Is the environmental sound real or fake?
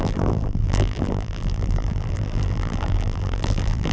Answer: fake